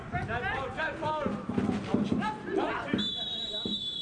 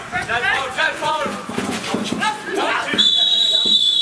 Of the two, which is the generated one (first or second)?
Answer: second